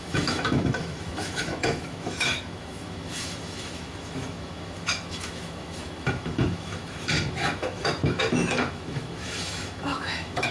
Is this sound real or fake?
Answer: fake